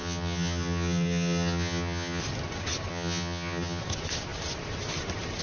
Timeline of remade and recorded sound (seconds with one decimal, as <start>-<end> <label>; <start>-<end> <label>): 0.0-2.2 remade; 2.2-2.9 recorded; 2.9-3.8 remade; 3.8-5.4 recorded